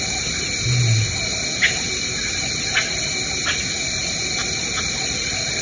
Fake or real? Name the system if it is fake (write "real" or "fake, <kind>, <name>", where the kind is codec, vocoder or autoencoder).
real